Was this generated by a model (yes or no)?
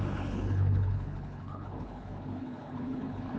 yes